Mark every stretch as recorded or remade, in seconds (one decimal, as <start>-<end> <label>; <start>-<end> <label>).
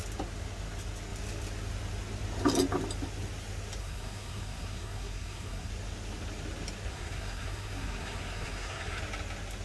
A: 0.0-3.8 recorded; 3.8-5.7 remade; 5.7-6.9 recorded; 6.9-9.0 remade; 9.0-9.6 recorded